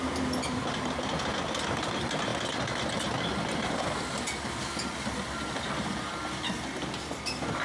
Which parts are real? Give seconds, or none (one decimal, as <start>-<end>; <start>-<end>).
0.0-7.6